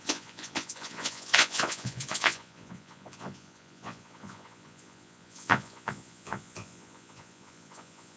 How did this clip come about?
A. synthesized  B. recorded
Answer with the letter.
A